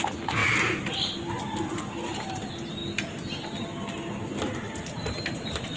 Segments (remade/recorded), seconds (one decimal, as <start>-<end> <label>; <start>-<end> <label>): 0.0-5.8 recorded